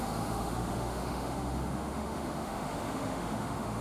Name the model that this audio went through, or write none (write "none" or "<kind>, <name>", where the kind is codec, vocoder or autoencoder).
autoencoder, DAC-VAE